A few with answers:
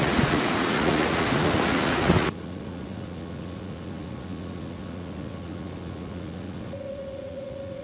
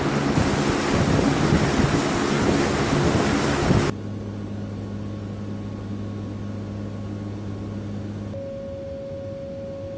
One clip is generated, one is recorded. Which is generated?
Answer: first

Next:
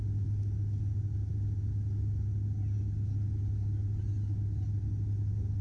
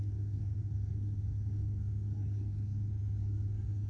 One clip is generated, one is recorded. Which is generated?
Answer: second